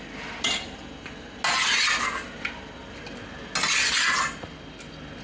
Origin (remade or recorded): recorded